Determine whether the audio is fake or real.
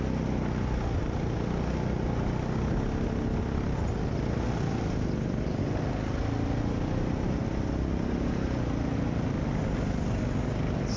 real